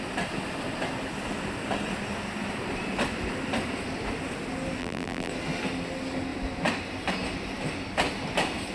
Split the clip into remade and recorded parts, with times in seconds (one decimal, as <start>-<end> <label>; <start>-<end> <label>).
0.0-4.8 recorded; 4.8-5.3 remade; 5.3-8.7 recorded